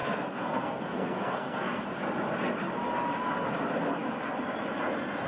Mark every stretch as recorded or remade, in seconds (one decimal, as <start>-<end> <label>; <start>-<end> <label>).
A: 0.0-1.8 remade; 1.8-5.3 recorded